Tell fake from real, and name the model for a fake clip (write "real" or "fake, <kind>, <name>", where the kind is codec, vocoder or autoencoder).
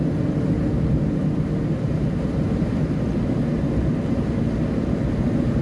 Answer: real